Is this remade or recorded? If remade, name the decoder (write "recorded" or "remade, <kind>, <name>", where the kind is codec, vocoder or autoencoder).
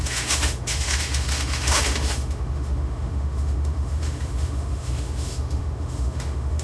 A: remade, autoencoder, DAC-VAE